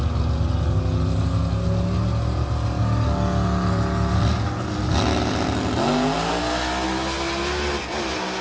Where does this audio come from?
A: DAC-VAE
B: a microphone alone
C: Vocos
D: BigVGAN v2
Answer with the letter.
B